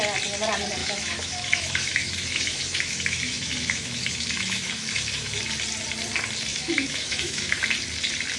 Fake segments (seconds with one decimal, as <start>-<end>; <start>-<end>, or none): 0.8-5.4; 6.5-7.6